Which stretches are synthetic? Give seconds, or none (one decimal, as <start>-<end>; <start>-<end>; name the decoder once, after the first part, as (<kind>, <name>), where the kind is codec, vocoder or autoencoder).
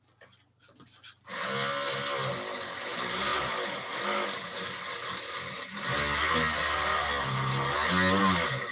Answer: none